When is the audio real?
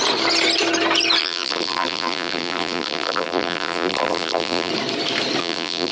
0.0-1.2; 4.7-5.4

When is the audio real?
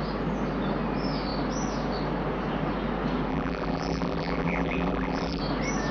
0.0-3.3; 5.4-5.9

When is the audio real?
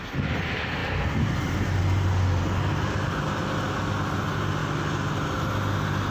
0.0-6.1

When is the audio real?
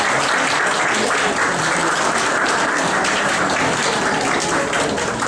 0.0-1.8; 3.5-5.3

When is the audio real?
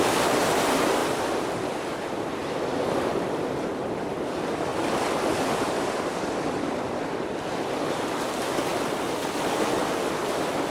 0.0-1.0; 4.2-4.7; 7.0-10.7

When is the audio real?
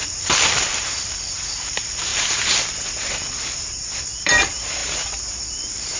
2.1-3.1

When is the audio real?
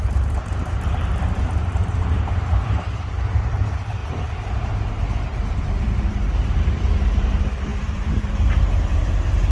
none